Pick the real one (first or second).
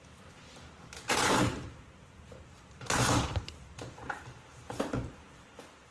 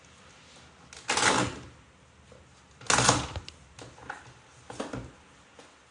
second